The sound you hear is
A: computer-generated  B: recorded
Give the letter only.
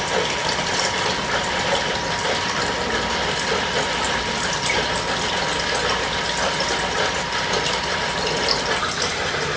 B